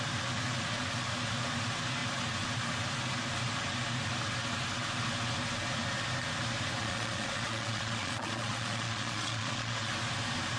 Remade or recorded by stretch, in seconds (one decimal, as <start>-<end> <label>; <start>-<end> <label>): 0.0-6.8 recorded; 6.8-9.9 remade; 9.9-10.6 recorded